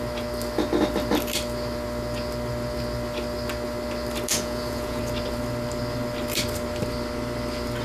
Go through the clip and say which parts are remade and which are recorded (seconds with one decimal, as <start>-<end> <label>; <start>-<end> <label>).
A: 0.0-4.3 recorded; 4.3-5.0 remade; 5.0-7.8 recorded